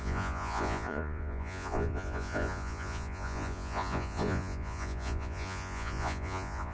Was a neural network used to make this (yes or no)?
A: yes